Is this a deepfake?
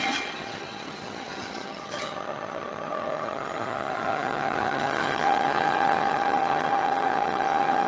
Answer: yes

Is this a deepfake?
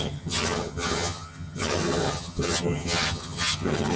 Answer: yes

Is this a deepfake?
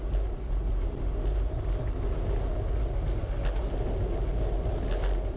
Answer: no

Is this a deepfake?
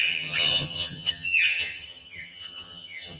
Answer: yes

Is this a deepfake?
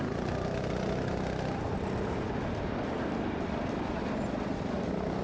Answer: no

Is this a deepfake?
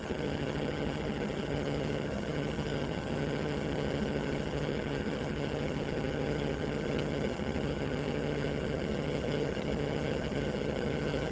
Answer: yes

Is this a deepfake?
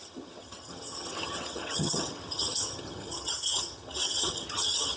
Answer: yes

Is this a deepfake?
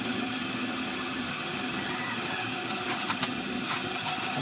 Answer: yes